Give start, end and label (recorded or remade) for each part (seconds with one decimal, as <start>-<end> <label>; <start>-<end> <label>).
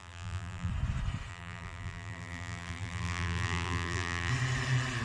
0.0-0.7 remade; 0.7-1.3 recorded; 1.3-4.3 remade; 4.3-5.0 recorded